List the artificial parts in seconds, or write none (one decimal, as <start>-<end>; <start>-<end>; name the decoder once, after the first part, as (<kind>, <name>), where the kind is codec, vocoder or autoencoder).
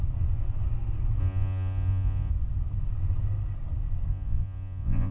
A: 1.2-2.3 (vocoder, Vocos); 4.1-5.1